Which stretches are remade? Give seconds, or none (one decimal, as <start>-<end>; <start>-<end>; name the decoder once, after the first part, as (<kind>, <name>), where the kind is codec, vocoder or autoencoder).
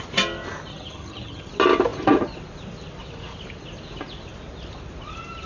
0.7-1.5 (vocoder, HiFi-GAN)